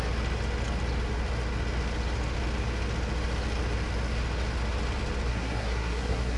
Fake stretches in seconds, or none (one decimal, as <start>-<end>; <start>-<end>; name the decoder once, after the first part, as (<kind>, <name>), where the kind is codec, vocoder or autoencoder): 5.3-6.4 (codec, SNAC)